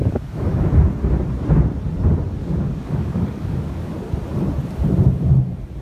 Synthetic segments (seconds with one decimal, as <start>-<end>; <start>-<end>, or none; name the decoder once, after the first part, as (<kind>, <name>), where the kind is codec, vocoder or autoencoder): 0.0-0.7 (codec, DAC); 2.4-4.2